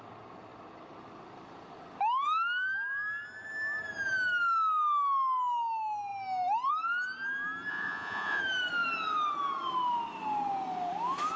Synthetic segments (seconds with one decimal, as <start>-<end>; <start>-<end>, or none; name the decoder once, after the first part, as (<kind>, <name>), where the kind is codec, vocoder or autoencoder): 7.7-8.4 (vocoder, Vocos)